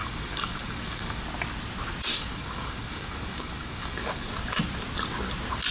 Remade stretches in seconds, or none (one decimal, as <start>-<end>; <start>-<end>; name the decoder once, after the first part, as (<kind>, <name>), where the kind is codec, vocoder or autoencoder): 0.0-1.2 (codec, DAC); 2.1-4.3